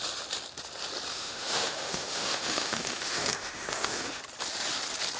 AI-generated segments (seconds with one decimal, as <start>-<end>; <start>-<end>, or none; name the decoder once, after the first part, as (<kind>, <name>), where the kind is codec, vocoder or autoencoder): 1.1-4.2 (autoencoder, DAC-VAE)